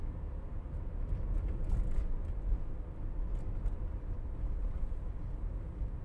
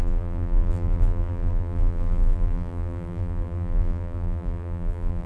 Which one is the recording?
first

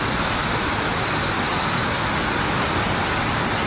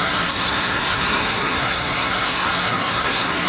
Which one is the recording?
first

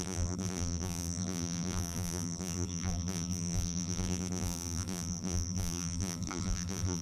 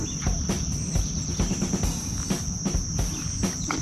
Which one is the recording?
second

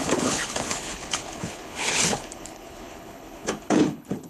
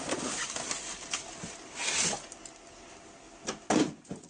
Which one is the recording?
second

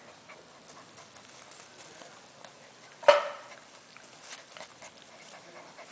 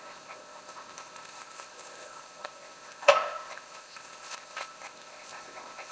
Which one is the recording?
first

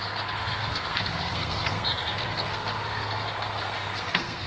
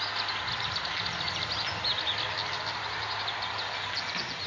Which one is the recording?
second